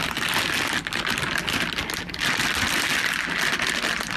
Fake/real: real